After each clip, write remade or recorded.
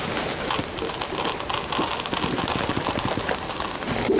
recorded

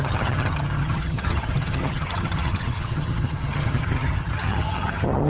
remade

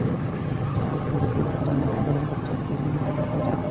remade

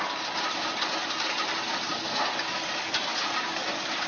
recorded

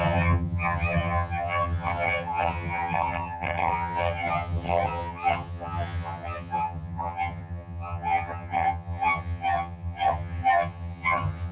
remade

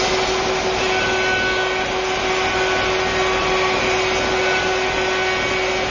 recorded